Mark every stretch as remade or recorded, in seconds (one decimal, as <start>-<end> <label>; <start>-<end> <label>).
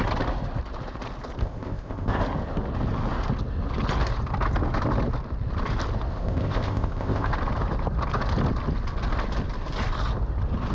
0.0-1.4 recorded; 1.4-2.2 remade; 2.2-6.1 recorded; 6.1-7.3 remade; 7.3-10.7 recorded